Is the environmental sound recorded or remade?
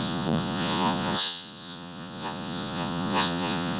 remade